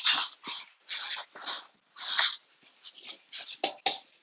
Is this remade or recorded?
recorded